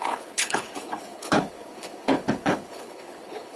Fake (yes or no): yes